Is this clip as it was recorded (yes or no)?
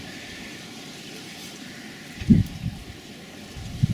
no